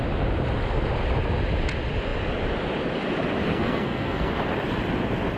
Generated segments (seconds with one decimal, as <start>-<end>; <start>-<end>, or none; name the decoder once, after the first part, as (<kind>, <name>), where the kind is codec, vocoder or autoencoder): 3.5-4.3 (codec, SNAC)